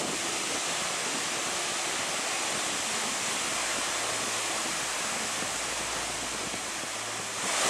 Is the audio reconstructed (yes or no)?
no